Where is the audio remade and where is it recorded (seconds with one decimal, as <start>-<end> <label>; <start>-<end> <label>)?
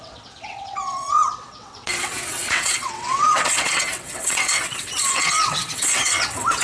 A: 0.0-6.6 remade